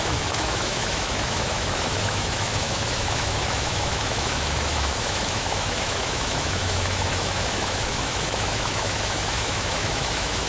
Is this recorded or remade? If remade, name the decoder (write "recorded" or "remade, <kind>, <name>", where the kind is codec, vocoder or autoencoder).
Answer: remade, autoencoder, DAC-VAE